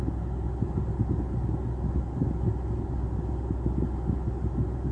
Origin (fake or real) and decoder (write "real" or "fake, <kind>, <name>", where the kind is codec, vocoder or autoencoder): real